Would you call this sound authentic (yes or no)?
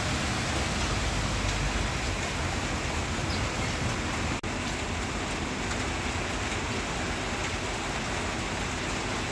yes